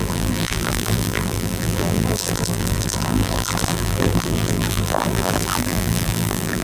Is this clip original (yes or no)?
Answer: no